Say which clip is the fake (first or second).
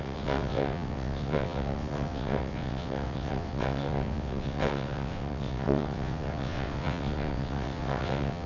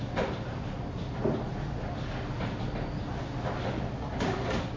first